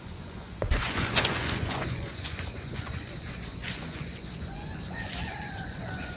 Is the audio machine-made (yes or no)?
yes